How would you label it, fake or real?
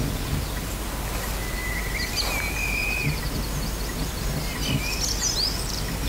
real